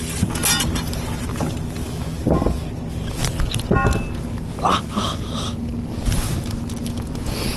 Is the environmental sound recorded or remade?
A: recorded